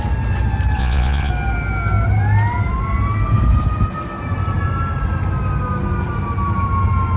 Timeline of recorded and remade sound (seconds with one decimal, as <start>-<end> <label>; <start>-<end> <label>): 0.0-0.8 recorded; 0.8-1.3 remade; 1.3-7.2 recorded